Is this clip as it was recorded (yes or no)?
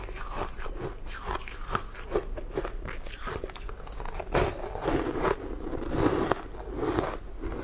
yes